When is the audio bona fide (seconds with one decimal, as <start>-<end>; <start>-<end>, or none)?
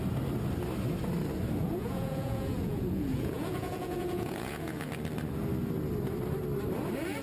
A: 0.0-1.6; 4.9-7.2